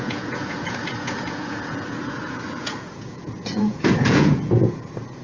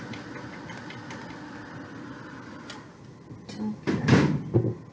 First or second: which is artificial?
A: first